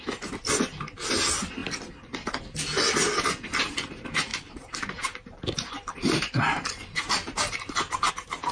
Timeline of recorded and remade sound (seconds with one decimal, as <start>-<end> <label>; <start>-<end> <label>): 0.0-4.3 recorded; 4.3-8.1 remade; 8.1-8.5 recorded